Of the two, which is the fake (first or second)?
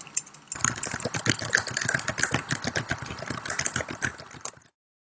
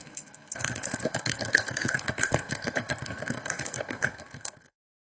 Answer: second